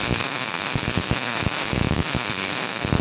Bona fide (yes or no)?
no